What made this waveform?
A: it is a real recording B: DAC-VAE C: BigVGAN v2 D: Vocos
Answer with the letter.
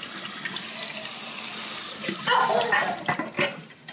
A